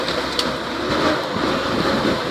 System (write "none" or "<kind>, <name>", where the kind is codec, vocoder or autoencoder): none